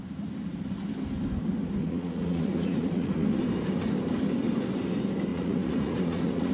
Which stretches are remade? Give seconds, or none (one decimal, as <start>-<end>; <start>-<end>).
1.8-3.4; 5.3-6.5

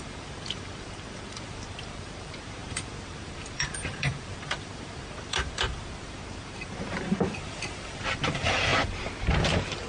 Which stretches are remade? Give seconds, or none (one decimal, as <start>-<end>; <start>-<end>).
0.0-8.7

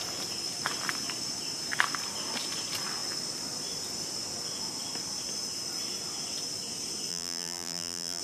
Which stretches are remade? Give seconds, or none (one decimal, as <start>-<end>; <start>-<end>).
7.1-8.2